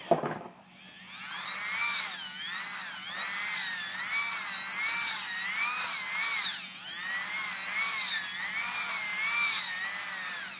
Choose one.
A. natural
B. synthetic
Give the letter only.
A